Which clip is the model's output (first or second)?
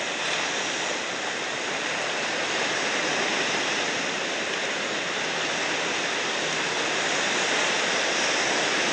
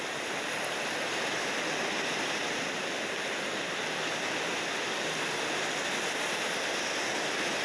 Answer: first